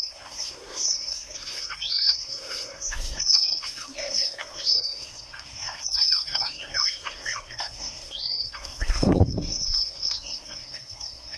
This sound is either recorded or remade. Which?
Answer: remade